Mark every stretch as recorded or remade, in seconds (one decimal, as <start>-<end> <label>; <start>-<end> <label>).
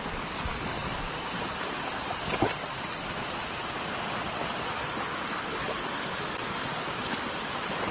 0.0-7.9 recorded